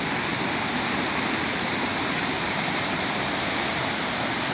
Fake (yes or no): no